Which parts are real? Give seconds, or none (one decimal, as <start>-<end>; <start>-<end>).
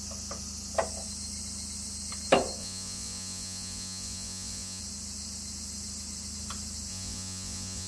0.0-2.6; 4.8-6.9